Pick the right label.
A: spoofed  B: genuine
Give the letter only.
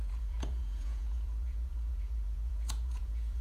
A